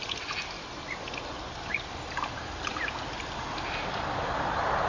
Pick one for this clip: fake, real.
real